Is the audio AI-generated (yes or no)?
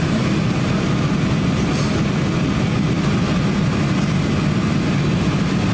no